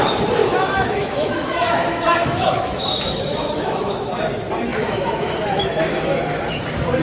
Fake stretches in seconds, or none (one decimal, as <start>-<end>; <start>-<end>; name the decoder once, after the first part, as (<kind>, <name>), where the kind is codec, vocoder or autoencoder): 0.4-4.1 (autoencoder, DAC-VAE); 4.7-6.6